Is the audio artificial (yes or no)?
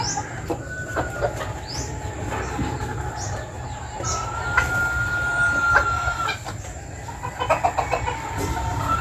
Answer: no